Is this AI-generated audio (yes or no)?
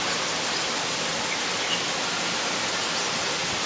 no